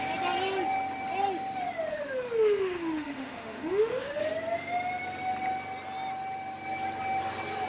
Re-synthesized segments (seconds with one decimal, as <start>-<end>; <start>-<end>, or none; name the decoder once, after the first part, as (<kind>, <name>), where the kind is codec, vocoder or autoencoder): 1.9-4.2 (autoencoder, DAC-VAE)